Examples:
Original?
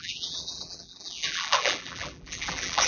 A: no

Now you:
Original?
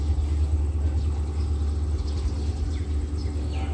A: yes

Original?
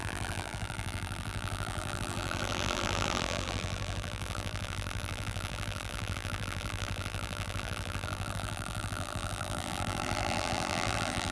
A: no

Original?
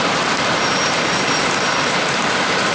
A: no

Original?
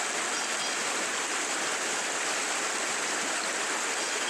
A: yes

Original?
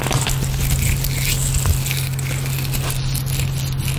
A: yes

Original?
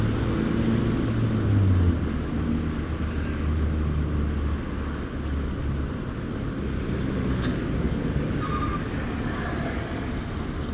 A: yes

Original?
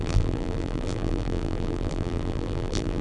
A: no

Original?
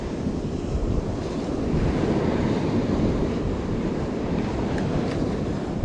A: no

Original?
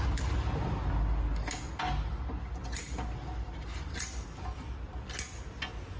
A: yes